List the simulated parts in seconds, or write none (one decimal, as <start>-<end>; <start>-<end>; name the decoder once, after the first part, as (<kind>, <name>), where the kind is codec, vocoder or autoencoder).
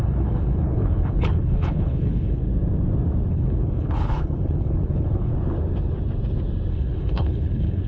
0.0-2.4 (codec, HILCodec); 3.3-5.3; 6.7-7.9